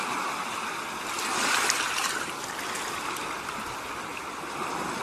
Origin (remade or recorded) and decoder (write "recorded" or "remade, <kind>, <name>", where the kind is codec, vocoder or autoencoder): recorded